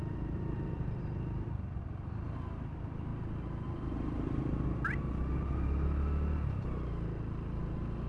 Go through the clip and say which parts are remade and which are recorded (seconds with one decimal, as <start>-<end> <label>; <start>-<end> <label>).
0.0-8.1 recorded